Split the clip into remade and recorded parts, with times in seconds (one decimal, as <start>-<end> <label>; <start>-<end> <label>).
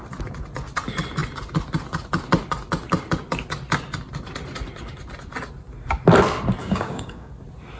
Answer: 0.0-6.6 recorded; 6.6-7.3 remade; 7.3-7.8 recorded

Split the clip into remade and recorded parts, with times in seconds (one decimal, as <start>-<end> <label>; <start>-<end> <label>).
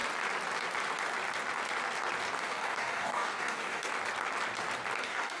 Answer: 0.0-2.4 recorded; 2.4-3.9 remade; 3.9-5.0 recorded; 5.0-5.4 remade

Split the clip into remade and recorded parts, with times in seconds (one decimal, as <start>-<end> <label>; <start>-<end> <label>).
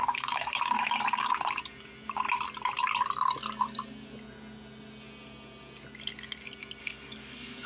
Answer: 0.0-1.3 remade; 1.3-6.8 recorded; 6.8-7.7 remade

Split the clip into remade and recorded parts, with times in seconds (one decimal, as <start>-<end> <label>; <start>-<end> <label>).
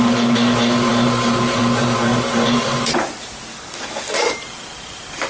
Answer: 0.0-3.5 recorded; 3.5-4.4 remade; 4.4-5.3 recorded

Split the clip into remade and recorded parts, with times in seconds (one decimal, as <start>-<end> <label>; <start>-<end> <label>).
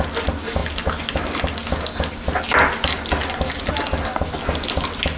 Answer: 0.0-5.2 recorded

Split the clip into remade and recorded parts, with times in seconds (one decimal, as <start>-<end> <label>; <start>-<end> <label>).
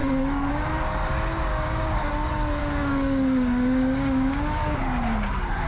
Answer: 0.0-0.5 remade; 0.5-1.5 recorded; 1.5-2.1 remade; 2.1-2.6 recorded; 2.6-4.8 remade; 4.8-5.7 recorded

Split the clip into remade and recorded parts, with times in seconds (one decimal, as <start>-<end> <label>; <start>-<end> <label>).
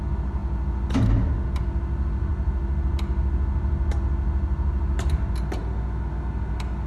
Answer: 0.0-6.9 recorded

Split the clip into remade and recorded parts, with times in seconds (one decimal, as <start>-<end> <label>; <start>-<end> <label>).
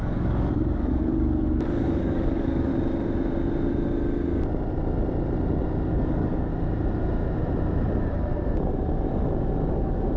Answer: 0.0-2.7 remade; 2.7-5.9 recorded; 5.9-6.5 remade; 6.5-9.7 recorded; 9.7-10.2 remade